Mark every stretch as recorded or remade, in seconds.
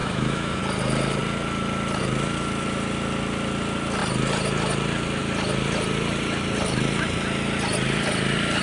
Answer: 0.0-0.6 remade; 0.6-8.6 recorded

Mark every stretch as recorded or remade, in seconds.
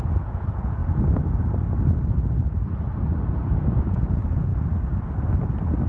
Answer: 0.0-0.8 remade; 0.8-3.8 recorded; 3.8-4.5 remade; 4.5-5.9 recorded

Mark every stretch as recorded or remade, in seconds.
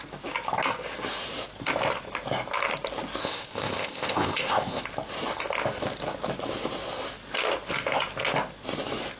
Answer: 0.0-3.2 recorded; 3.2-4.8 remade; 4.8-9.2 recorded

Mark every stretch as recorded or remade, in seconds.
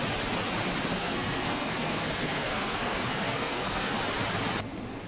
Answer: 0.0-0.9 recorded; 0.9-3.9 remade; 3.9-5.1 recorded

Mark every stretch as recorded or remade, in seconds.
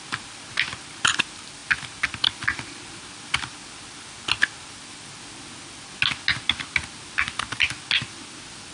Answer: 0.0-8.7 recorded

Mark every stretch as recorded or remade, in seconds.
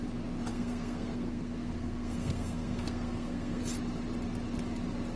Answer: 0.0-0.5 recorded; 0.5-3.6 remade; 3.6-5.2 recorded